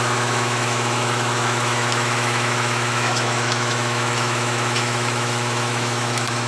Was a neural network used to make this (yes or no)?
yes